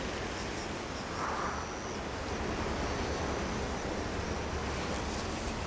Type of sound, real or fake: real